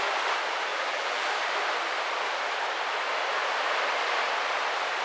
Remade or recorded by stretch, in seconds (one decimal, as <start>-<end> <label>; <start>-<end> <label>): 0.0-0.7 recorded; 0.7-1.2 remade; 1.2-5.0 recorded